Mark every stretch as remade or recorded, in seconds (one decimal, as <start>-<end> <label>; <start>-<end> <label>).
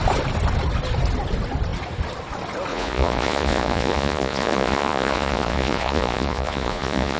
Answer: 0.0-2.7 recorded; 2.7-7.2 remade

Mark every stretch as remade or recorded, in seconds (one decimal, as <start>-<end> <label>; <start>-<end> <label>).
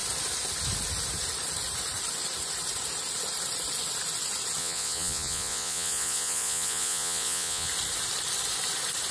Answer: 0.0-4.6 recorded; 4.6-7.7 remade; 7.7-9.1 recorded